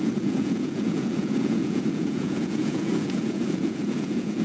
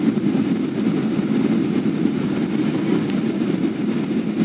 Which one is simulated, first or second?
first